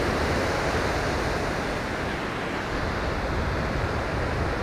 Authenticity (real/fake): real